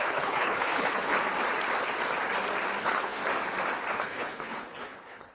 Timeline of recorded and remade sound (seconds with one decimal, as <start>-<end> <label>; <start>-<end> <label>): 0.0-1.0 remade; 1.0-2.8 recorded; 2.8-3.2 remade; 3.2-3.9 recorded; 3.9-5.3 remade